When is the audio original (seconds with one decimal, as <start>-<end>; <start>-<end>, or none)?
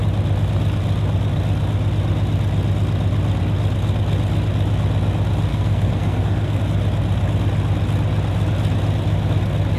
0.0-5.5; 6.6-9.8